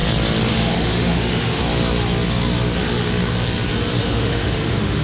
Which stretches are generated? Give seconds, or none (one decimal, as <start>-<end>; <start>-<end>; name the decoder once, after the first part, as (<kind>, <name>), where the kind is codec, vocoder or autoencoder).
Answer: 0.5-1.6 (autoencoder, DAC-VAE); 4.0-5.0

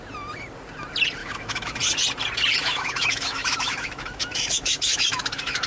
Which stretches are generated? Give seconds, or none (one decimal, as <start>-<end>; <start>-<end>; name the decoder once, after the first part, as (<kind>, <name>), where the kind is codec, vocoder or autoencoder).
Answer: 1.2-1.8 (autoencoder, DAC-VAE); 2.6-5.7

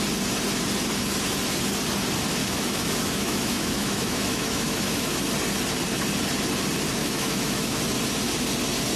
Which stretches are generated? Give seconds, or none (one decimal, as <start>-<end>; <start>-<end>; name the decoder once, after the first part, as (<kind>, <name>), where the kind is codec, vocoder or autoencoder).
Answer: 2.4-5.2 (autoencoder, DAC-VAE); 7.0-7.8

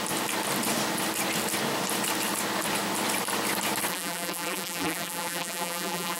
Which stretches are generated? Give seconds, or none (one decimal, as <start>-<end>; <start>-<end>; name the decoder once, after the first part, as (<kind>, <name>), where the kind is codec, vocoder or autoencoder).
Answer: 3.9-6.2 (vocoder, BigVGAN v2)